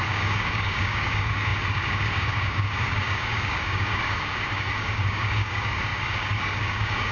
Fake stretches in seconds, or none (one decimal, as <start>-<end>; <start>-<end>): 0.0-7.1